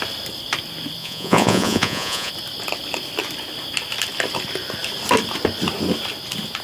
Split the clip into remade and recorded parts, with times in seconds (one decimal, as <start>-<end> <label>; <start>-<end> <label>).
0.0-1.0 recorded; 1.0-2.3 remade; 2.3-6.6 recorded